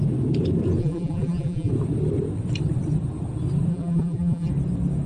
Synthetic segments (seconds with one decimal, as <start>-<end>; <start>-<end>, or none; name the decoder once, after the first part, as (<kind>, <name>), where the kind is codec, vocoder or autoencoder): 0.8-1.7 (vocoder, BigVGAN v2); 3.7-4.5